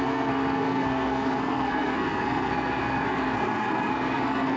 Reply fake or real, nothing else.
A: fake